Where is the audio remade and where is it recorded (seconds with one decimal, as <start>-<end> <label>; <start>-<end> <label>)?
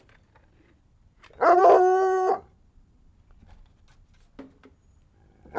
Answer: 0.0-5.6 recorded